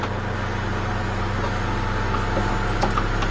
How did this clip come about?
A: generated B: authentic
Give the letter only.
B